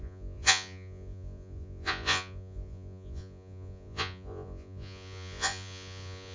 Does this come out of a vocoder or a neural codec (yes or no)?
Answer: yes